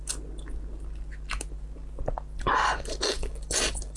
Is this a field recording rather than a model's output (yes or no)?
yes